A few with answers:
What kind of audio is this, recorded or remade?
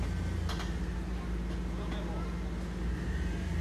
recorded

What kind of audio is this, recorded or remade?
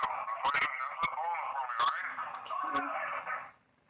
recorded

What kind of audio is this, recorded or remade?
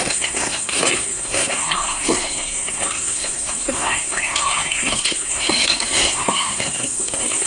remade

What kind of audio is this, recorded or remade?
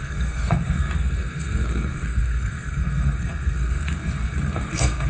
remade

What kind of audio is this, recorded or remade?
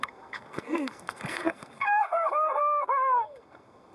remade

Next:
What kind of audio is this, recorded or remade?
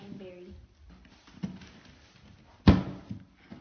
recorded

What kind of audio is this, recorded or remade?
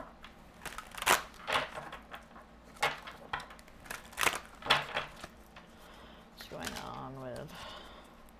recorded